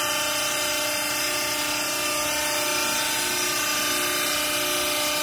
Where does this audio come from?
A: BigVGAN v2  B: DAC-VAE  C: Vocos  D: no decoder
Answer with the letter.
D